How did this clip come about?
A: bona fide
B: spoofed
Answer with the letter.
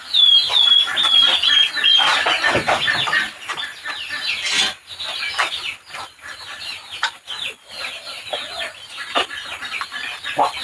A